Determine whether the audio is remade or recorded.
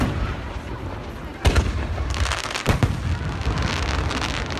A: recorded